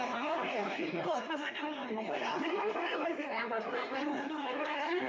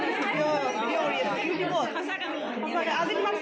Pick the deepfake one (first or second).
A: first